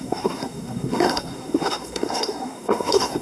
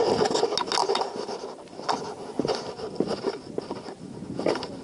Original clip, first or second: second